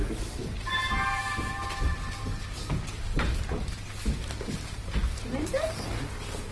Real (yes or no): no